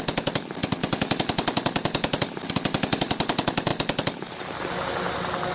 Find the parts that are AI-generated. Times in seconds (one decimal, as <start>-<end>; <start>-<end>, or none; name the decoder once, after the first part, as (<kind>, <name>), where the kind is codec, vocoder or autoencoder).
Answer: none